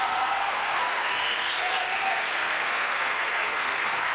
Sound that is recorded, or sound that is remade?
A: remade